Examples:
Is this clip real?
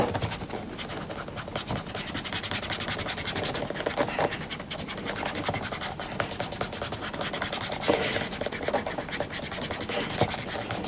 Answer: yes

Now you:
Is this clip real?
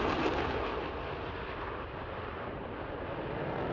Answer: yes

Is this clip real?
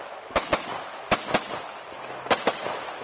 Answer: yes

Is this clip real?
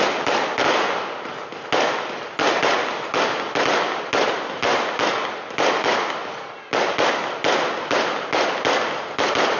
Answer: yes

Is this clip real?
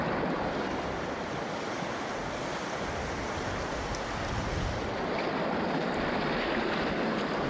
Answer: yes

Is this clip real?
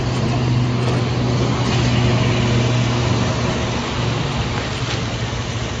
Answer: yes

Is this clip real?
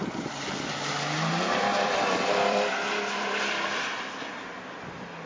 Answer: no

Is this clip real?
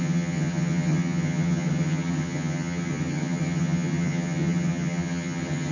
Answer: no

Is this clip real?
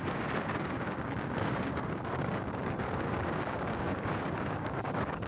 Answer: no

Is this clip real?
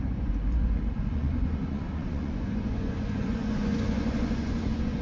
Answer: no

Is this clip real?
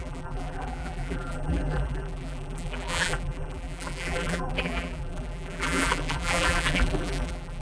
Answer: no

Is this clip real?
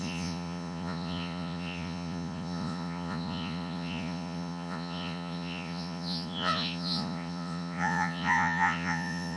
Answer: no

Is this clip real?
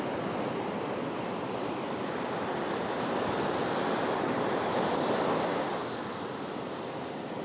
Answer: yes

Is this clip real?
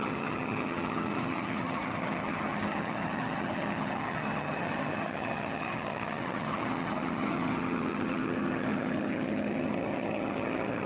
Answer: no